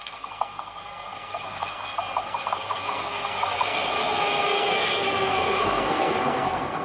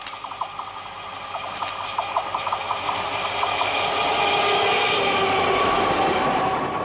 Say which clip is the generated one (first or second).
first